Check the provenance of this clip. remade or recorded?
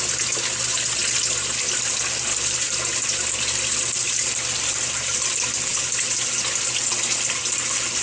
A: recorded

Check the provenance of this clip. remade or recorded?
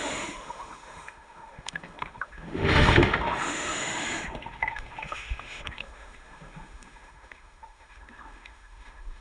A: remade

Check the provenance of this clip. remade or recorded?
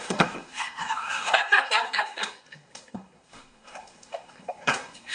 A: remade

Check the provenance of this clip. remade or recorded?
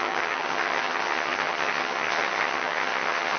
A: remade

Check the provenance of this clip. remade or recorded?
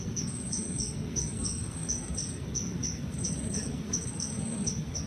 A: remade